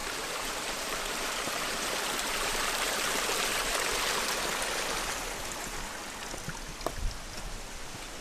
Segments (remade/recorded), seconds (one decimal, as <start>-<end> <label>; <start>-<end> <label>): 0.0-3.4 remade; 3.4-8.2 recorded